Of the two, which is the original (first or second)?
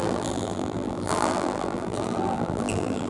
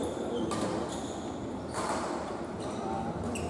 second